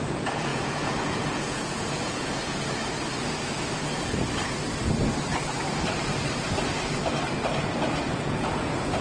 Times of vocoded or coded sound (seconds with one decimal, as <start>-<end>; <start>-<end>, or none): 0.0-2.8; 7.8-9.0